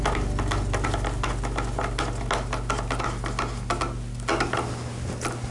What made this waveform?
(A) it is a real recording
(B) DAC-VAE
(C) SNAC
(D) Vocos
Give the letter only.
A